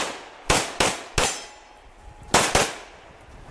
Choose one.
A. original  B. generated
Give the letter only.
A